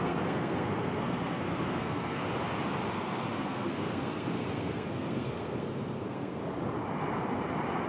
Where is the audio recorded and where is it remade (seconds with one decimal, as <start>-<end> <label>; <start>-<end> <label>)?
0.0-2.2 remade; 2.2-2.9 recorded; 2.9-6.4 remade; 6.4-7.9 recorded